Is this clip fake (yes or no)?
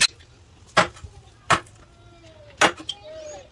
no